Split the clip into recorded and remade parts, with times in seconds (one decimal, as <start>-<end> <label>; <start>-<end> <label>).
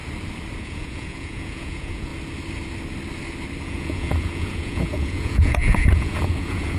0.0-0.6 recorded; 0.6-2.1 remade; 2.1-3.6 recorded; 3.6-6.8 remade